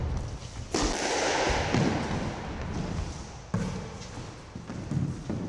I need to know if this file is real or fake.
real